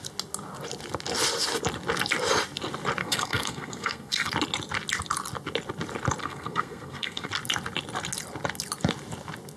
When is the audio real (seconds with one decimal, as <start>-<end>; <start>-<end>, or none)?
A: 0.0-3.0; 4.3-6.2; 7.3-9.6